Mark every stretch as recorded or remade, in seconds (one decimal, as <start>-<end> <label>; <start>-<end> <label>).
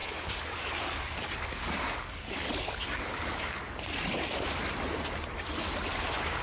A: 0.0-3.8 remade; 3.8-6.4 recorded